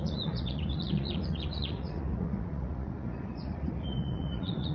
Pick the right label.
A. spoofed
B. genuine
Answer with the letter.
A